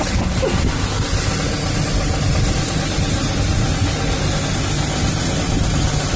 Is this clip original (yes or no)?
yes